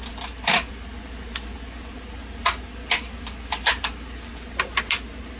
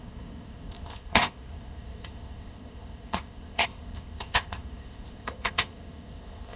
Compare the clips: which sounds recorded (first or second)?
first